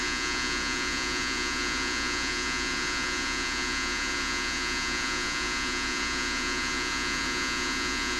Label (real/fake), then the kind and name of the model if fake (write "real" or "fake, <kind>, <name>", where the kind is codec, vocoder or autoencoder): fake, vocoder, Vocos